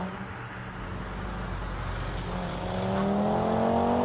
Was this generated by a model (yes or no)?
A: no